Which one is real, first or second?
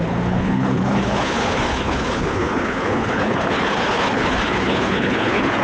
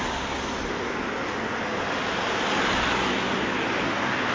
second